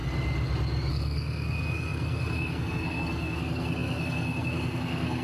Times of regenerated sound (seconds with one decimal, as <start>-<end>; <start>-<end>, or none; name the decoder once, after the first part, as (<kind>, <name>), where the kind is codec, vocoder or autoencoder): 0.9-5.2 (codec, SNAC)